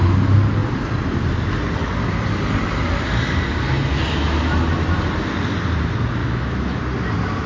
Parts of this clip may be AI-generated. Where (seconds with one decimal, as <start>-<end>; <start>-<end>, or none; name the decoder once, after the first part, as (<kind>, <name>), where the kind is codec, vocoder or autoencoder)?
6.2-6.8 (autoencoder, DAC-VAE)